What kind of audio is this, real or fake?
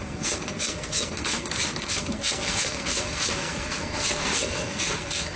fake